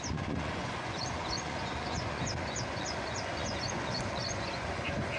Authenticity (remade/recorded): remade